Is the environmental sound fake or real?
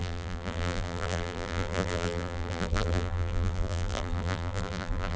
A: fake